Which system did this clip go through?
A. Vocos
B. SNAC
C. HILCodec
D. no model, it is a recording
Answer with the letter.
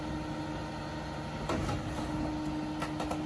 D